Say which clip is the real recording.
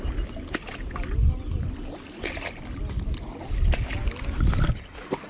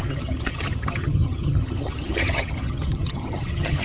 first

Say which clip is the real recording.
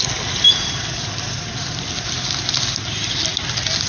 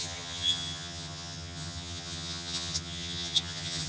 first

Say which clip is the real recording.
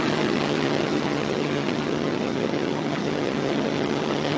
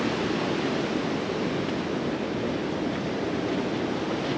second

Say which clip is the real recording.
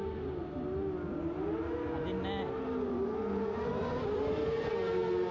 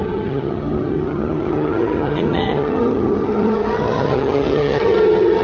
first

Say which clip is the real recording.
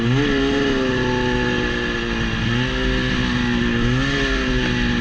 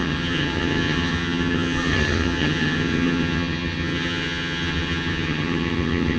first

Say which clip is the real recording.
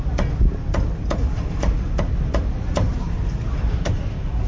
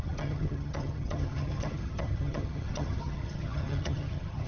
first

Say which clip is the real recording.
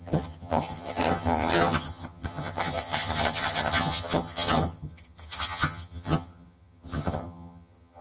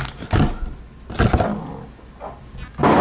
second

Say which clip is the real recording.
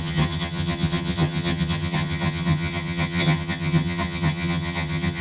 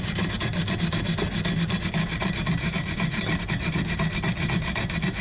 second